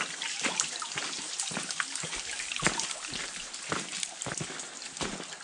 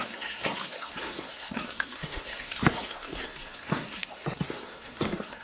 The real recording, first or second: first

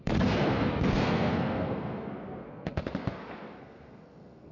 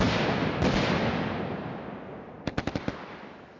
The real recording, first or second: second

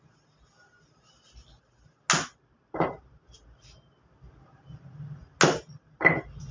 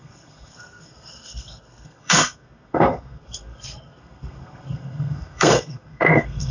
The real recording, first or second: first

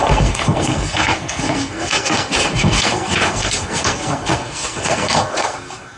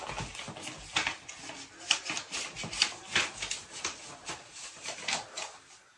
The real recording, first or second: second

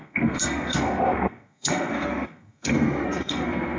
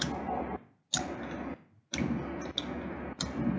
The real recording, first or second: second